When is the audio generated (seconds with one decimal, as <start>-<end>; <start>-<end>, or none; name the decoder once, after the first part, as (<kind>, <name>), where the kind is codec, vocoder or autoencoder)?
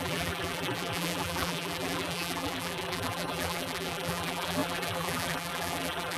0.0-6.2 (vocoder, BigVGAN v2)